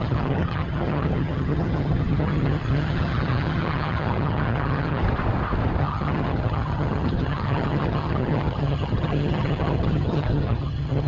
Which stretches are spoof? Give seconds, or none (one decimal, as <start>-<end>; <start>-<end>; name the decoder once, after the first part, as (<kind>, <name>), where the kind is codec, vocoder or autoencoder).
0.0-5.0 (vocoder, HiFi-GAN); 5.8-11.1